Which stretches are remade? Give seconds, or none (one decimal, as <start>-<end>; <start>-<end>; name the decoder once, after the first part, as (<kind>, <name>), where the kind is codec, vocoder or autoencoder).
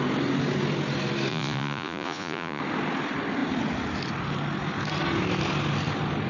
1.3-2.6 (vocoder, Vocos)